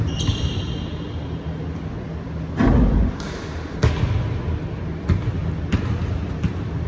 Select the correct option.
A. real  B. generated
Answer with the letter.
A